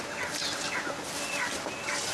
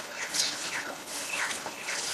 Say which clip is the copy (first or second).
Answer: second